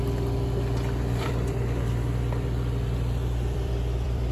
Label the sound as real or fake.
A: fake